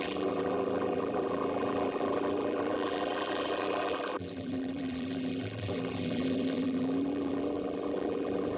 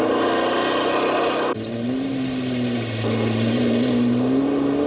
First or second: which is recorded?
second